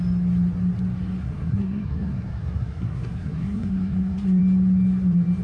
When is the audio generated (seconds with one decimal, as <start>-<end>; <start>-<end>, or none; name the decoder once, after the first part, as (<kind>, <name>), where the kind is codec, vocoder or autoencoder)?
1.2-4.4 (codec, SNAC)